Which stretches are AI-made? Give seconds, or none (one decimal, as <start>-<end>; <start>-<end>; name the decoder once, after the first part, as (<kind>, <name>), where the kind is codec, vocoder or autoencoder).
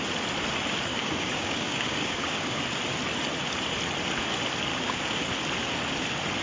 0.9-2.6 (codec, DAC); 4.7-5.2